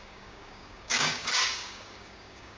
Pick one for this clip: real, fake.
fake